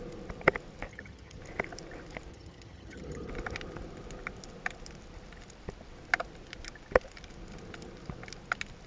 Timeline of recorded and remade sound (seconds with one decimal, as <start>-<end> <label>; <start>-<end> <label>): 0.0-0.9 recorded; 0.9-1.4 remade; 1.4-2.3 recorded; 2.3-3.3 remade; 3.3-8.9 recorded